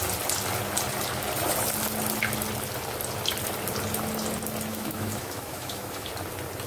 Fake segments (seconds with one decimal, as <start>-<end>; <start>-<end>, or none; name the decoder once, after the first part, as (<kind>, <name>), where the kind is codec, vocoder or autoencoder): 4.7-6.1 (autoencoder, DAC-VAE)